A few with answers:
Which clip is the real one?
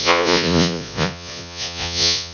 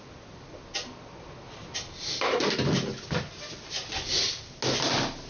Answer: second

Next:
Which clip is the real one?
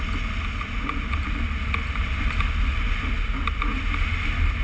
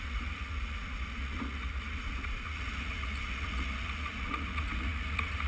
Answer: first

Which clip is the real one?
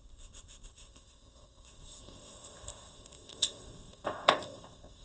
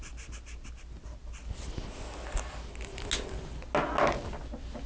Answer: second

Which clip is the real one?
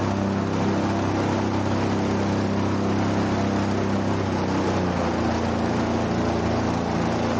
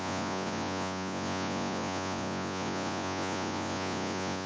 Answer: first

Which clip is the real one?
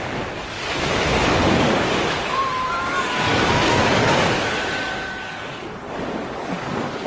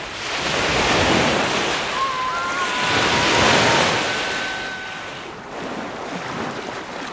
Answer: second